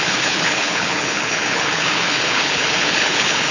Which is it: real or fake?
fake